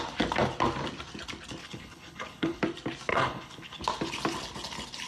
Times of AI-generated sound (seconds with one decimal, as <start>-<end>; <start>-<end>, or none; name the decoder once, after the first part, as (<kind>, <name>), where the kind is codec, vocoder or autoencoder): 1.6-2.6 (codec, HILCodec); 3.1-3.8